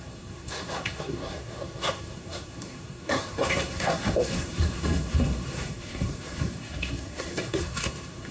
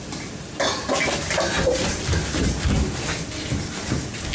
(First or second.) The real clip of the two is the second